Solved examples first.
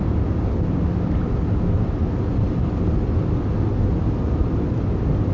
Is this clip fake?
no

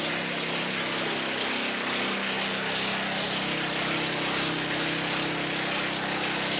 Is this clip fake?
no